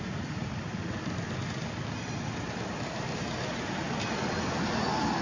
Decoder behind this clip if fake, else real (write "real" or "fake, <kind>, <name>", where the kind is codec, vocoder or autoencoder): real